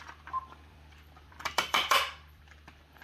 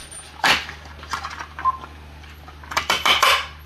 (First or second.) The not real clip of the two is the first